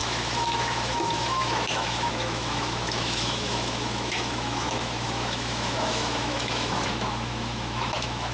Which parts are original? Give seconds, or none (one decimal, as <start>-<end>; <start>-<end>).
none